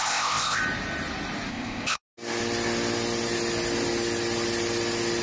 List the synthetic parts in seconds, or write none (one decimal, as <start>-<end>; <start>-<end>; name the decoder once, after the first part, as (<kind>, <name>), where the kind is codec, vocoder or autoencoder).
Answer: 0.0-0.6 (codec, ZipCodec); 1.5-2.0